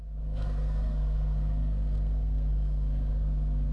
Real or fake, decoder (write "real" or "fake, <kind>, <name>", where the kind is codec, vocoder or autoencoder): fake, codec, SNAC